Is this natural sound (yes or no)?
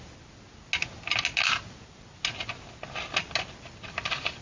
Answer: yes